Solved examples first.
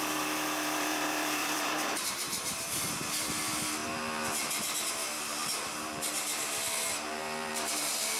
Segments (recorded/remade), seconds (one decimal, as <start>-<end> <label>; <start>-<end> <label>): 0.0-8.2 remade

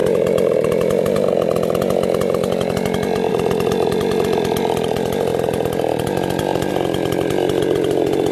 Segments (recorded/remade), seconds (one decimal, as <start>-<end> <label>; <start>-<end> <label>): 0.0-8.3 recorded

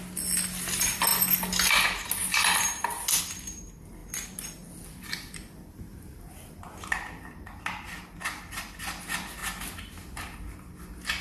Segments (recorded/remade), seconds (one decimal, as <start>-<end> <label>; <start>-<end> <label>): 0.0-4.0 recorded; 4.0-7.6 remade; 7.6-11.2 recorded